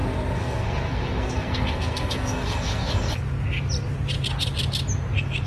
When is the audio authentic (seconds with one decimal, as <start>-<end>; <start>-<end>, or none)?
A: 3.2-5.5

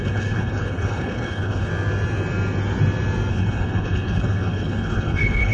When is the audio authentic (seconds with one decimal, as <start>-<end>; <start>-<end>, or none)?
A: 1.7-3.3

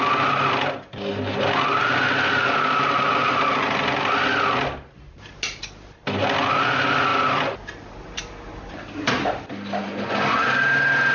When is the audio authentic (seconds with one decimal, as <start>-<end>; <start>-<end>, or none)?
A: 0.0-11.1

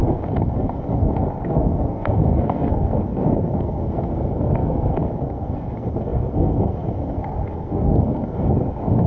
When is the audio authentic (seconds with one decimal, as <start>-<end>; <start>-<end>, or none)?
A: none